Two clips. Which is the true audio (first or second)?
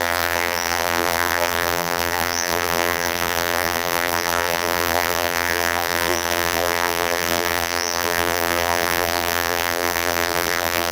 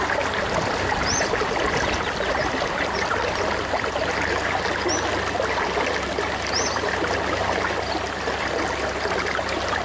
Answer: second